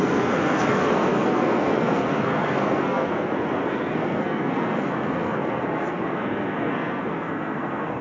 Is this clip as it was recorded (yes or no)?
no